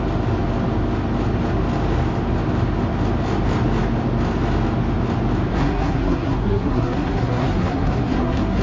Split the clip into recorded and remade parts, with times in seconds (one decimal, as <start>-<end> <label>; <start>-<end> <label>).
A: 0.0-5.5 recorded; 5.5-8.6 remade